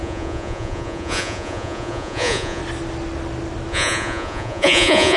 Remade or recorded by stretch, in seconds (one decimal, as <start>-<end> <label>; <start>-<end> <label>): 0.0-2.6 remade; 2.6-3.7 recorded; 3.7-5.2 remade